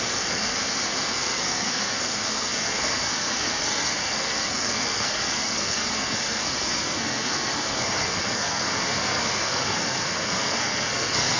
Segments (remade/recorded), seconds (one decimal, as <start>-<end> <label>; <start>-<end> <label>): 0.0-11.4 remade